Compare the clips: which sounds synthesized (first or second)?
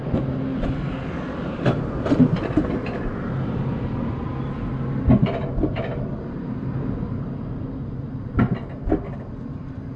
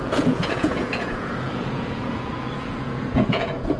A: second